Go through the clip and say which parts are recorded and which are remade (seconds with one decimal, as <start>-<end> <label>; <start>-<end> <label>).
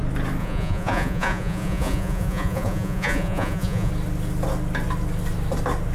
0.0-0.4 recorded; 0.4-3.9 remade; 3.9-5.9 recorded